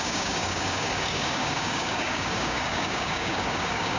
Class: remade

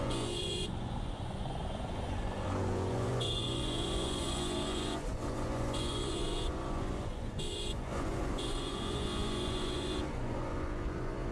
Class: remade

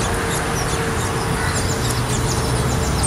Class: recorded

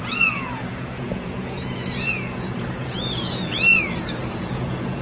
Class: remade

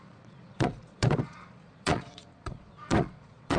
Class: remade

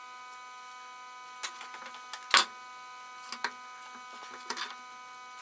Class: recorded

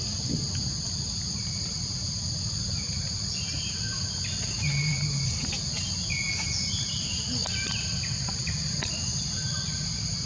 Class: recorded